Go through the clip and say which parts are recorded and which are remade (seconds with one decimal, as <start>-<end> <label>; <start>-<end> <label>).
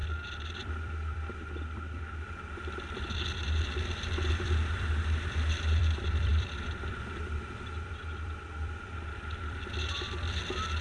0.0-0.5 recorded; 0.5-10.8 remade